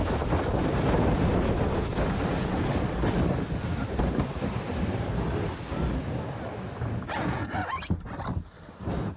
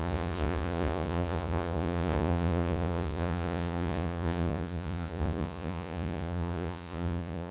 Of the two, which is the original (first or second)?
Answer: first